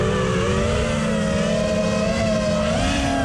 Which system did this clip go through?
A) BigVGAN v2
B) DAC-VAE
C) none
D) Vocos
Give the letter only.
C